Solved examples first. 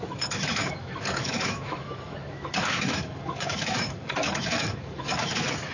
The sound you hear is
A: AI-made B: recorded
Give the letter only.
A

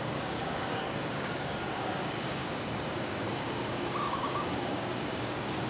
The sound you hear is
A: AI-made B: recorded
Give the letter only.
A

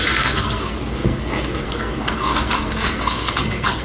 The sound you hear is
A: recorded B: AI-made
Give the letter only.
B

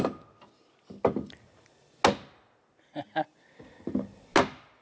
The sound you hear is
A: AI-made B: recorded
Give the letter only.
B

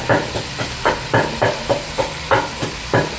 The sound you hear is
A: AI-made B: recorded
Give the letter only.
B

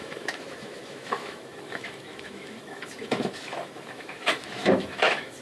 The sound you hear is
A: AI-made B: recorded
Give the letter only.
A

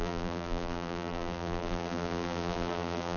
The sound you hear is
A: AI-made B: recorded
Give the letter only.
A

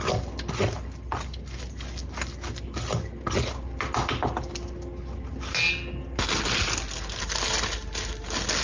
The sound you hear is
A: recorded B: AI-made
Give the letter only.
A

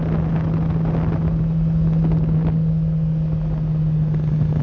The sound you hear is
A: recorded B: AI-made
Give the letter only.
A